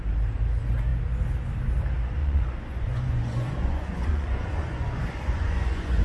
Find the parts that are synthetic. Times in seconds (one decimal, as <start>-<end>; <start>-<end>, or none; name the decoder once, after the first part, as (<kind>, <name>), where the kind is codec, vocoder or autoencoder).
2.2-6.0 (vocoder, Vocos)